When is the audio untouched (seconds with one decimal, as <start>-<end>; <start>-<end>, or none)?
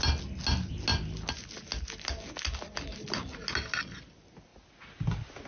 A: 0.0-5.5